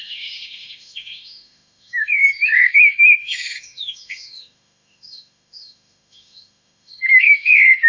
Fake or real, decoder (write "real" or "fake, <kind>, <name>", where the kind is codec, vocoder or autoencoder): fake, autoencoder, DAC-VAE